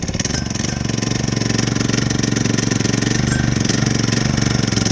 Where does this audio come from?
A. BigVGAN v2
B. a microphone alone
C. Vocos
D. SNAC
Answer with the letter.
B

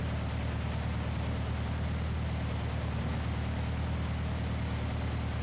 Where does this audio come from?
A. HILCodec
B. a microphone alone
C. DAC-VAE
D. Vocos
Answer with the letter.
B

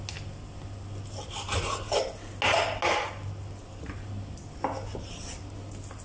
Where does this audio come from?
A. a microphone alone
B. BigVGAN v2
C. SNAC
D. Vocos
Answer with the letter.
A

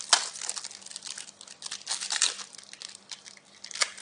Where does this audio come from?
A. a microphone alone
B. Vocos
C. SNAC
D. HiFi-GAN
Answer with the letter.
A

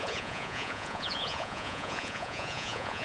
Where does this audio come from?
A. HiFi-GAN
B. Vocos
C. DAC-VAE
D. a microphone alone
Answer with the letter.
B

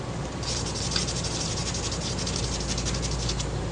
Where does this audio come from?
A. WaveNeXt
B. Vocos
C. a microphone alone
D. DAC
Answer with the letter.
C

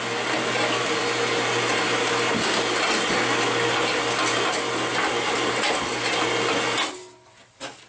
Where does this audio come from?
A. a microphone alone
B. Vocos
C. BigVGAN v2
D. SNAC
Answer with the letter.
A